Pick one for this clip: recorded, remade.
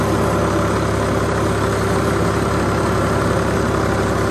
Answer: recorded